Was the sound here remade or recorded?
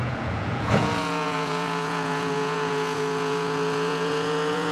remade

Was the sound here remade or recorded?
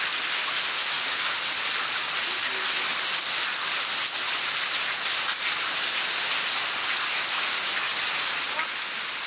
recorded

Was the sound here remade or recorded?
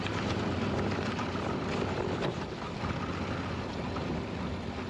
recorded